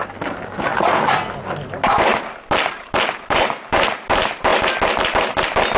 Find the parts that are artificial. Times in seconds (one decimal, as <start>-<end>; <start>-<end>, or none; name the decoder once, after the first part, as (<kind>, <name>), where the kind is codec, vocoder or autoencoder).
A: none